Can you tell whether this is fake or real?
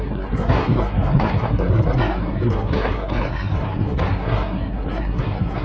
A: fake